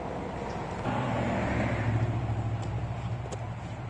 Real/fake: real